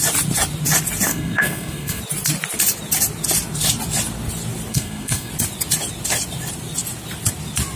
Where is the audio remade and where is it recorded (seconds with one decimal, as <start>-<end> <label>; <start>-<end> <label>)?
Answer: 0.0-1.1 recorded; 1.1-2.0 remade; 2.0-4.7 recorded; 4.7-5.3 remade; 5.3-7.8 recorded